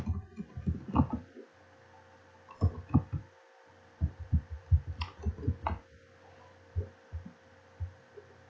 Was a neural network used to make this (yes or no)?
no